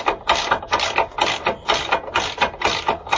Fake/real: real